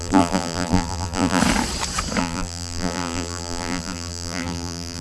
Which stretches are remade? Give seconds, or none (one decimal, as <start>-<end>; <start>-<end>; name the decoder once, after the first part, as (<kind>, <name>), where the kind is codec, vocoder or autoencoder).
0.0-1.4 (vocoder, BigVGAN v2); 2.2-5.0